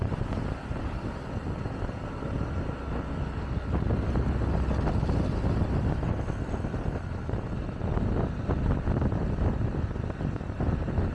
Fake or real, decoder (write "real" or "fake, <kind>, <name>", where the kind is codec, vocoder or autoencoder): real